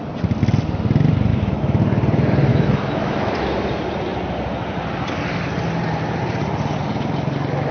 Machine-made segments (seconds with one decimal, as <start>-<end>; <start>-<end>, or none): 1.3-1.8; 2.5-3.3